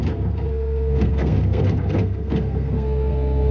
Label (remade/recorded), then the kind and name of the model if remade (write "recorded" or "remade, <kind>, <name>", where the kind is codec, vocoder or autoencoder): remade, codec, SNAC